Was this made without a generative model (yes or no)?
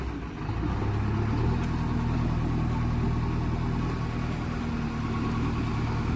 yes